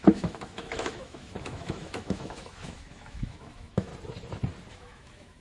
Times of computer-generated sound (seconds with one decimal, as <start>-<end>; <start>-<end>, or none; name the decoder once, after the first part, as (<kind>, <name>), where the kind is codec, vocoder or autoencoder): 0.0-3.9 (autoencoder, DAC-VAE); 4.7-5.4